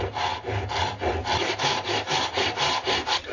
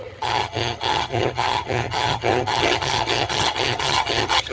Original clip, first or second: first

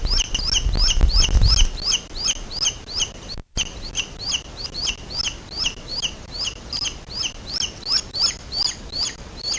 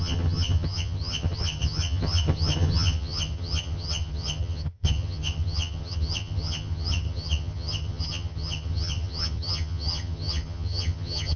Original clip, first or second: first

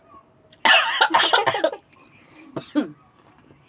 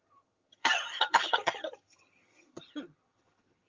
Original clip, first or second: first